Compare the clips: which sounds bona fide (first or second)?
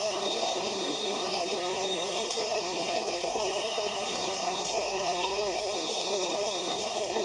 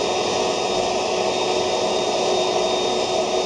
second